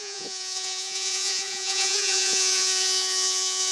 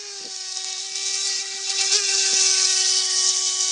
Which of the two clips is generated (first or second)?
first